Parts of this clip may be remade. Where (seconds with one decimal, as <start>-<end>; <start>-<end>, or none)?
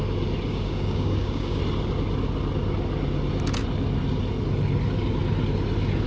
0.5-1.6